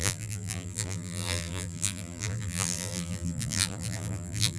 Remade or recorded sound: remade